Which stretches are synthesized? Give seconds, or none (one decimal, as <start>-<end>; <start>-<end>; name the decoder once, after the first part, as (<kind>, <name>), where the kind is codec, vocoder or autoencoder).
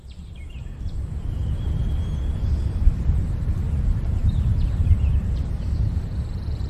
0.0-1.8 (vocoder, BigVGAN v2); 2.6-6.7